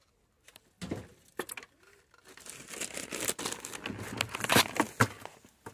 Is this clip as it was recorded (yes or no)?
yes